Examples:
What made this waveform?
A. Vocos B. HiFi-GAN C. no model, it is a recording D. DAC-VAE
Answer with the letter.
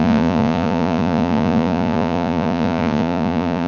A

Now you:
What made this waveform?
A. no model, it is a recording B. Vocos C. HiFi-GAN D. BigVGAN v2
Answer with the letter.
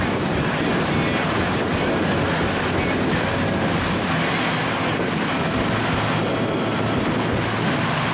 A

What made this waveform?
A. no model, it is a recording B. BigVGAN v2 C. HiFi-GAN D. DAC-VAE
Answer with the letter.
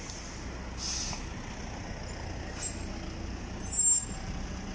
A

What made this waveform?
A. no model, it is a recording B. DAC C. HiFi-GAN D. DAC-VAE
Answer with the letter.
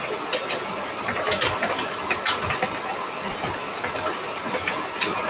A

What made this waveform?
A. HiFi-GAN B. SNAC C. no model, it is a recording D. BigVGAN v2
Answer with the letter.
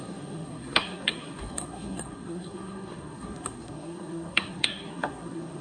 B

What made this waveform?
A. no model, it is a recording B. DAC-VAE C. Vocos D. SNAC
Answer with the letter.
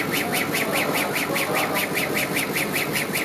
A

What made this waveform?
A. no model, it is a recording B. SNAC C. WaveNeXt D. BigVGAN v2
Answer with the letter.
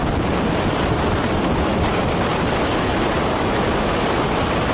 A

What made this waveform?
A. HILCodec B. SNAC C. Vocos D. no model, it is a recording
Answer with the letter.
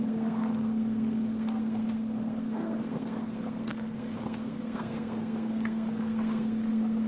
B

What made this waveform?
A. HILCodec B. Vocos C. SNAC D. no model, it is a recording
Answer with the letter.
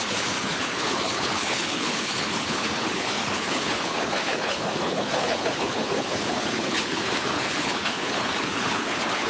A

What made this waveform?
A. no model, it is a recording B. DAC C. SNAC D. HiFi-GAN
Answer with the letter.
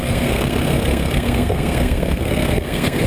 C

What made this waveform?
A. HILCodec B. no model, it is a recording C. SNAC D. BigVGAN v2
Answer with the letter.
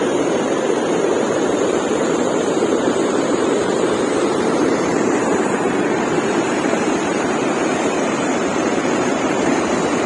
D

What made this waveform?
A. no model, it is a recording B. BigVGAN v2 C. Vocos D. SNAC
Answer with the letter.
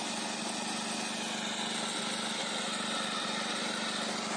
A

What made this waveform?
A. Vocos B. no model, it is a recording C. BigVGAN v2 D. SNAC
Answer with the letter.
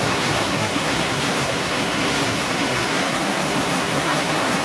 D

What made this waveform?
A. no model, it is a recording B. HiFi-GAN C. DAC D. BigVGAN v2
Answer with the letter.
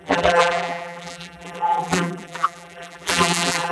D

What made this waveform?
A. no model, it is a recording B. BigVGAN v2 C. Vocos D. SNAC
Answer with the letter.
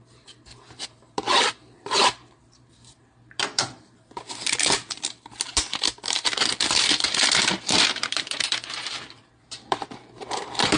B